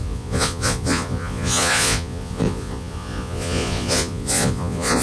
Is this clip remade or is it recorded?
remade